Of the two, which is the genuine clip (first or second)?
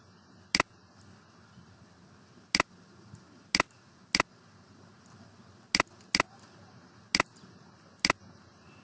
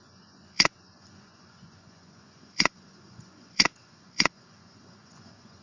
first